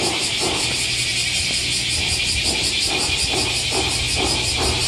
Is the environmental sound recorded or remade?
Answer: recorded